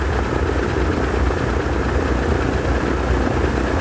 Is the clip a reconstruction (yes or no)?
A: no